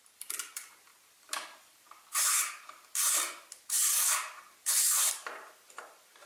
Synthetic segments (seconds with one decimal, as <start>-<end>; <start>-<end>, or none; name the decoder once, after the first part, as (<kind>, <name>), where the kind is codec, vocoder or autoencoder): 0.0-6.3 (vocoder, BigVGAN v2)